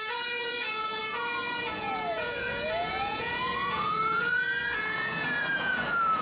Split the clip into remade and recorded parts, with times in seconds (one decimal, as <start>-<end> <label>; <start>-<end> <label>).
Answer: 0.0-6.2 remade